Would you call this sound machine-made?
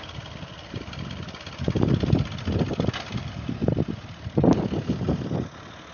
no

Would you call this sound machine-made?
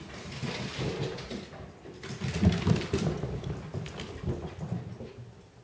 no